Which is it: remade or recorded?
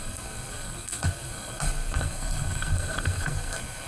remade